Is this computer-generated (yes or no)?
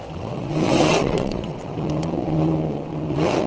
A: yes